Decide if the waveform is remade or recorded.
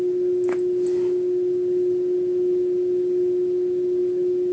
recorded